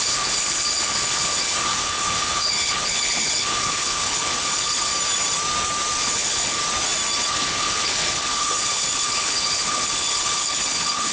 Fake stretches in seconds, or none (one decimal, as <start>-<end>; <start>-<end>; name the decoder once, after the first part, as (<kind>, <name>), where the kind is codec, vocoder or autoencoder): 0.0-4.9 (codec, HILCodec); 6.0-6.6; 7.3-11.1